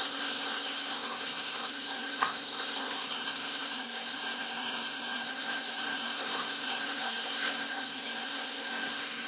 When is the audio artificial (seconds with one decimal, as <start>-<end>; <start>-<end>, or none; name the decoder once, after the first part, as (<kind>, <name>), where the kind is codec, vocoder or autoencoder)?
0.0-9.3 (codec, SNAC)